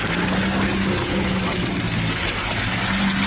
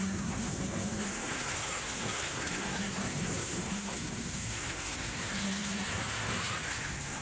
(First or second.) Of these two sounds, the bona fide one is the first